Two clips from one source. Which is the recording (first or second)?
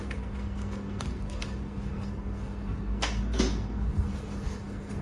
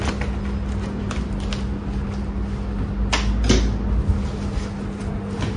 second